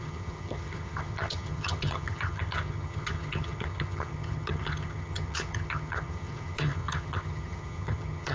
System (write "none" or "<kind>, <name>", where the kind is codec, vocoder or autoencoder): vocoder, HiFi-GAN